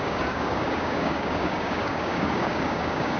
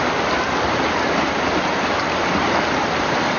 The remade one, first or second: first